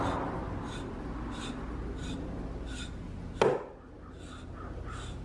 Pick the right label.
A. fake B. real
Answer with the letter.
B